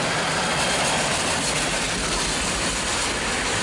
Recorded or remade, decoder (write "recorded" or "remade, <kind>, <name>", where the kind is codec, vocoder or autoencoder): recorded